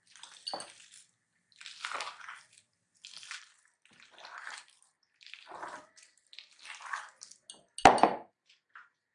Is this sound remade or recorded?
recorded